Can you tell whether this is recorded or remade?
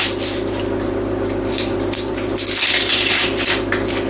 recorded